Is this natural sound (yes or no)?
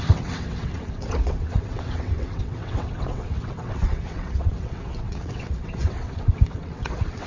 no